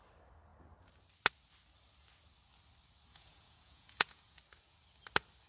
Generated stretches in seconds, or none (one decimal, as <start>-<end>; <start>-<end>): 3.1-4.4